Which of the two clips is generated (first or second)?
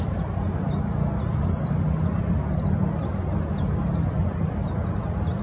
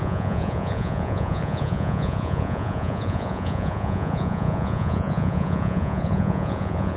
second